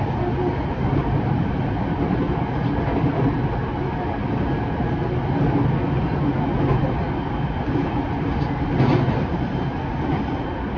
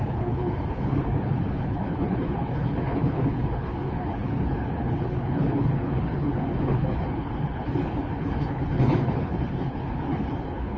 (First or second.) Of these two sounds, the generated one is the second